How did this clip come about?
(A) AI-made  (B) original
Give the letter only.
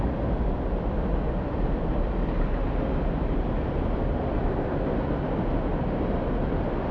B